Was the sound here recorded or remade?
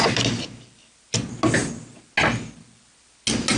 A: recorded